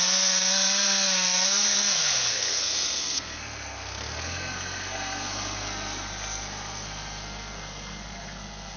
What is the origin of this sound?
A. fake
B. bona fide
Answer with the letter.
A